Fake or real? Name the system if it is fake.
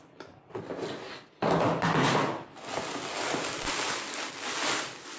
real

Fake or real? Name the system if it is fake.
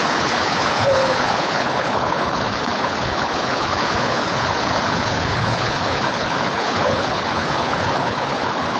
fake, codec, HILCodec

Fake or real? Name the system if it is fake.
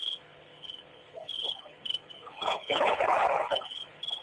fake, codec, HILCodec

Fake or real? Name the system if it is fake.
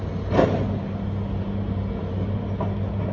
real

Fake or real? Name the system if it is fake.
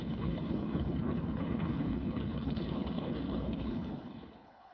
fake, codec, HILCodec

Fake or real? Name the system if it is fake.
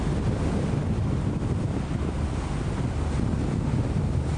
real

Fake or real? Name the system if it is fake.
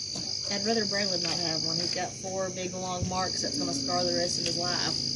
real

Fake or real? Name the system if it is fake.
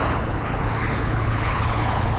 fake, codec, HILCodec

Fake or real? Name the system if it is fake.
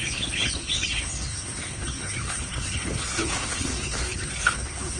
fake, codec, HILCodec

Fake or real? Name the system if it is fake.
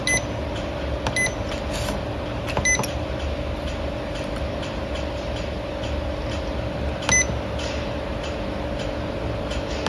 real